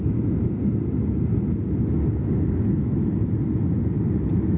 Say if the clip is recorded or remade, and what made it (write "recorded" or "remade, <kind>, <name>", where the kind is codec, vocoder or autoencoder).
recorded